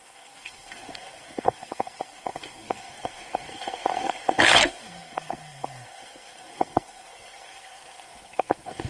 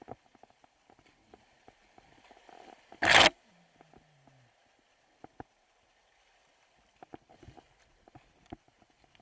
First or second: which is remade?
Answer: first